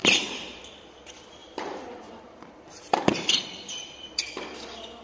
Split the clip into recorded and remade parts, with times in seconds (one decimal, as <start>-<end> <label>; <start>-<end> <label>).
0.0-0.6 remade; 0.6-1.4 recorded; 1.4-4.4 remade; 4.4-5.0 recorded